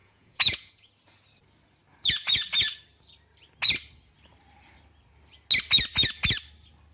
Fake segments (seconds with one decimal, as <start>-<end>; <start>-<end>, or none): 0.0-0.9